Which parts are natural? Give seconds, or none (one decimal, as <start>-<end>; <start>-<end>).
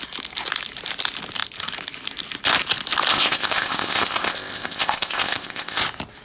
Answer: 0.0-3.1; 5.8-6.2